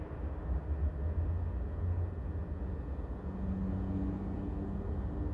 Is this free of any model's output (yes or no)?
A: yes